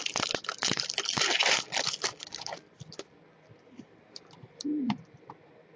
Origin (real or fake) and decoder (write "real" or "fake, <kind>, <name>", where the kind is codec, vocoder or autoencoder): fake, vocoder, BigVGAN v2